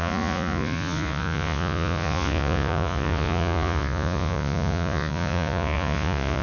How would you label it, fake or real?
fake